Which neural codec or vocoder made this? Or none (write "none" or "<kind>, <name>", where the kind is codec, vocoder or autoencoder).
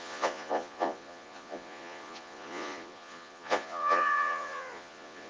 vocoder, Vocos